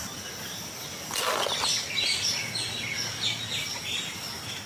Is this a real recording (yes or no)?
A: yes